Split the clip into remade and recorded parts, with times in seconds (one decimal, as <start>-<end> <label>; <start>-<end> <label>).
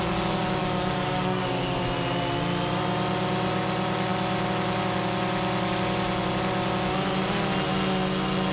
0.0-0.6 recorded; 0.6-1.8 remade; 1.8-8.5 recorded